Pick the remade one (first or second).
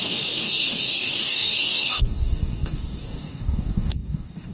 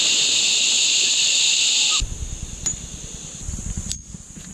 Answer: first